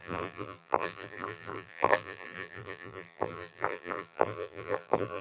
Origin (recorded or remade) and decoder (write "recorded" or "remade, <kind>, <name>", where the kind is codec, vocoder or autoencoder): remade, vocoder, BigVGAN v2